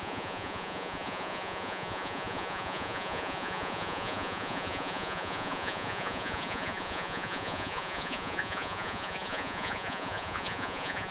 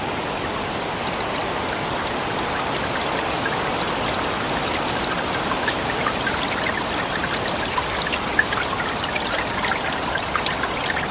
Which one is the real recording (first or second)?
second